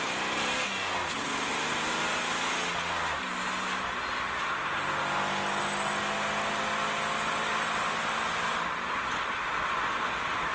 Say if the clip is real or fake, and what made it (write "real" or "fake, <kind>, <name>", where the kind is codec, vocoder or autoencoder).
real